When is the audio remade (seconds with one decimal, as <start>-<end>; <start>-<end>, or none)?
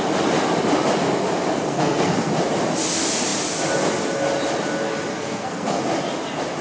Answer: 1.5-2.3; 5.1-5.8